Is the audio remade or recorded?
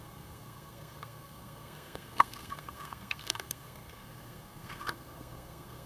remade